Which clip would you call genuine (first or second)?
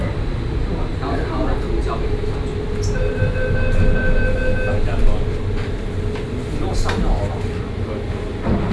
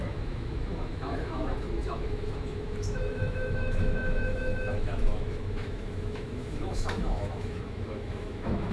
first